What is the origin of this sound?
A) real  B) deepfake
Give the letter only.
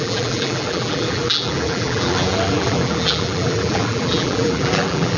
B